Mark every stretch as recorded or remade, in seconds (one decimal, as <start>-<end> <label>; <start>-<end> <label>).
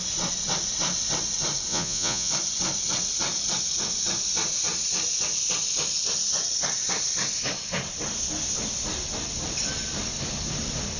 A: 0.0-1.7 recorded; 1.7-2.3 remade; 2.3-11.0 recorded